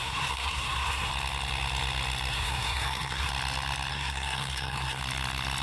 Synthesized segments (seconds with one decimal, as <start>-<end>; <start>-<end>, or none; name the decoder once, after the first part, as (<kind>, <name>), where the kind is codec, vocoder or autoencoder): 0.0-1.1 (codec, SNAC); 2.3-3.3; 3.9-5.0

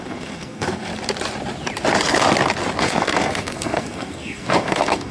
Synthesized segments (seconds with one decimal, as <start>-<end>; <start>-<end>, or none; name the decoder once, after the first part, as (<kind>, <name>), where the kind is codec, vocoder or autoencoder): 0.0-0.9 (codec, SNAC); 2.8-5.1

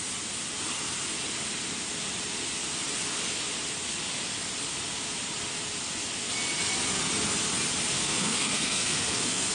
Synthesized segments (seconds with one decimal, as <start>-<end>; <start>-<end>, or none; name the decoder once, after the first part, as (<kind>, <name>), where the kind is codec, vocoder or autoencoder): 7.9-9.5 (codec, SNAC)

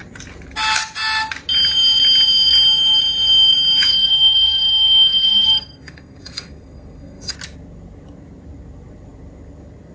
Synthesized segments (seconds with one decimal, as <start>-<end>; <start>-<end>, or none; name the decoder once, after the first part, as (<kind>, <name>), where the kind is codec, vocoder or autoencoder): 3.9-7.3 (codec, SNAC)

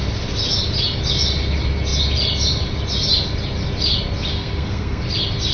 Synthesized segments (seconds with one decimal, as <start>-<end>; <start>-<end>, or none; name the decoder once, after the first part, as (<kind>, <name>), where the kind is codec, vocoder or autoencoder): 4.3-5.0 (codec, SNAC)

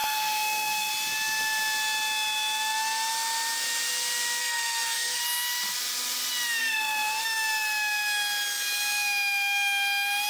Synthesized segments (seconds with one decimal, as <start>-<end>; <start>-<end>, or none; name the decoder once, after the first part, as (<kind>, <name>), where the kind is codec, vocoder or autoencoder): 0.0-0.9 (codec, SNAC); 4.4-5.2; 6.6-7.2